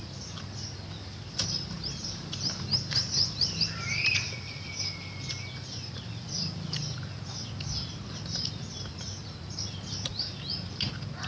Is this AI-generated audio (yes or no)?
no